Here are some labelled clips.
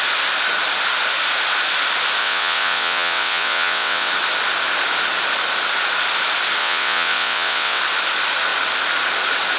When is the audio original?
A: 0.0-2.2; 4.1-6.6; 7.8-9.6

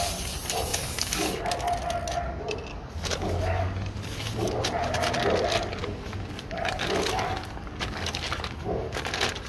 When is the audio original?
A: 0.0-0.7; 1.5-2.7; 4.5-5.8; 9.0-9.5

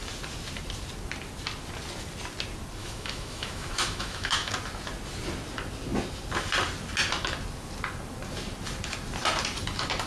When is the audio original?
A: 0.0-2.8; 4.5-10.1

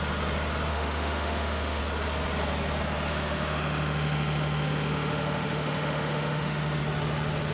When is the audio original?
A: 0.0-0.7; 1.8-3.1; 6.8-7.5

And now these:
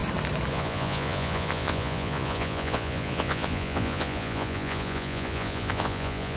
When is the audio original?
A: 0.0-0.5